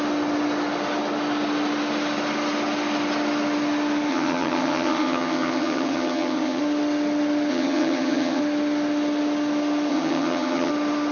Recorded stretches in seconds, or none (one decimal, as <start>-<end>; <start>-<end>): 0.0-4.1; 6.6-7.5; 8.4-9.9; 10.7-11.1